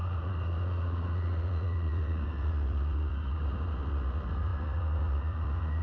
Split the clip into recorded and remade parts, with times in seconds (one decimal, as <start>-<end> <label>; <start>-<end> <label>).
0.0-5.8 remade